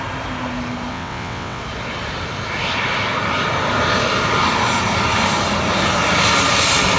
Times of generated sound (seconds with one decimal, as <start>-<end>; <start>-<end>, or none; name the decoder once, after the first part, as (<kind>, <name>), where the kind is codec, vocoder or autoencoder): 0.9-1.6 (vocoder, WaveNeXt)

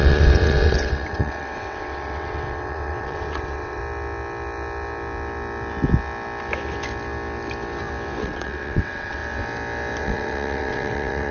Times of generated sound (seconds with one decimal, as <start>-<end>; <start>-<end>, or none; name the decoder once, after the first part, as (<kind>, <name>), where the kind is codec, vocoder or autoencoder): 0.0-3.8 (vocoder, WaveNeXt); 8.2-9.2; 10.0-11.3

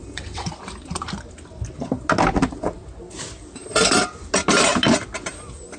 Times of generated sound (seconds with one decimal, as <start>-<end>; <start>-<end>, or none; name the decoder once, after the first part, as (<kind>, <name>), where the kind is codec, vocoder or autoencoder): 0.0-0.5 (vocoder, WaveNeXt)

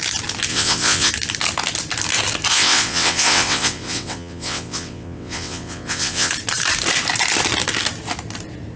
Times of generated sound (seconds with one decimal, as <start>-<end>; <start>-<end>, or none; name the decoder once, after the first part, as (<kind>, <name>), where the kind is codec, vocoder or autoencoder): 0.5-1.1 (vocoder, WaveNeXt); 2.5-6.3

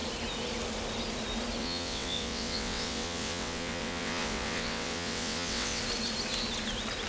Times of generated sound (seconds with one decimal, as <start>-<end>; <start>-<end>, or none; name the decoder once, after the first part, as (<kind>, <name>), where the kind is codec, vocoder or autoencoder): 1.6-5.8 (vocoder, WaveNeXt)

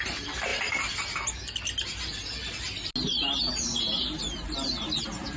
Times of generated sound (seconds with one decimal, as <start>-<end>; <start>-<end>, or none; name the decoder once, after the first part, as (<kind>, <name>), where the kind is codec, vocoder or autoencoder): none

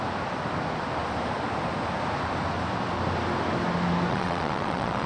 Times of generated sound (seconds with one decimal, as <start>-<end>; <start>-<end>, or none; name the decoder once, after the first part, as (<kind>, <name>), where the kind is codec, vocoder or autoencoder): 4.1-5.1 (vocoder, WaveNeXt)

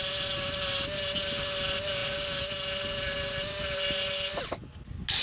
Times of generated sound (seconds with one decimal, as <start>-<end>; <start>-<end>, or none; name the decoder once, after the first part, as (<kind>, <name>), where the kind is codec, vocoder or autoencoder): none